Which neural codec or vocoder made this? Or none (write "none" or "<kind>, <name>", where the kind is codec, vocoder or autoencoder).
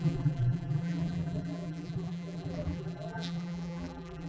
vocoder, BigVGAN v2